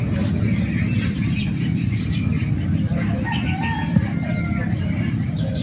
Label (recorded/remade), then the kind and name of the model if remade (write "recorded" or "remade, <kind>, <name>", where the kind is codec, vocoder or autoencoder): recorded